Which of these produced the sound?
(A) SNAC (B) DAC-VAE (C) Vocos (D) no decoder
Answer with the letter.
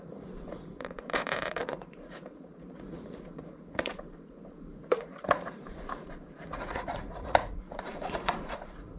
C